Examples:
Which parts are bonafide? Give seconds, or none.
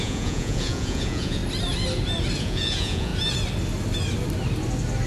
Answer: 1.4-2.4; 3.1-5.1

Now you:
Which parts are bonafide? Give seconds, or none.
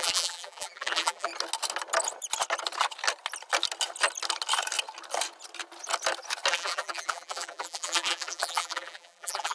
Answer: 1.3-6.5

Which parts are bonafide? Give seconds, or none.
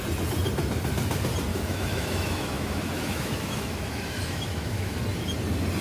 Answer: 0.0-1.5; 5.0-5.8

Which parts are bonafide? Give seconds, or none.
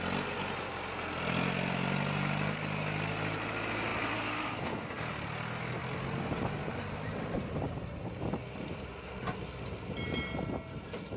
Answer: 0.0-3.9; 4.6-5.8; 9.3-11.2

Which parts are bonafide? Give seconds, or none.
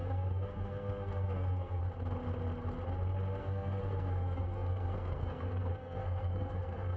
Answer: 1.8-3.4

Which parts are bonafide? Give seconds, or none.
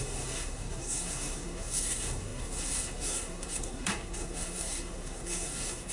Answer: none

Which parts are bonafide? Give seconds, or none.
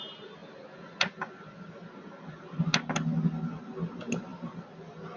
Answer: 0.0-5.2